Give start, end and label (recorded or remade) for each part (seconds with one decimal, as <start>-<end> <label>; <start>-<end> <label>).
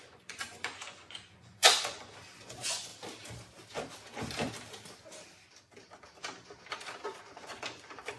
0.0-2.9 remade; 2.9-7.2 recorded; 7.2-8.2 remade